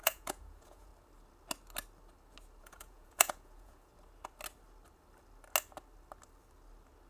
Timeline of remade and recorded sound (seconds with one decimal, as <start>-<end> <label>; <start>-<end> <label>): 0.0-0.9 remade; 0.9-2.6 recorded; 2.6-3.9 remade; 3.9-7.1 recorded